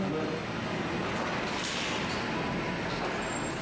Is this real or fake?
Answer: real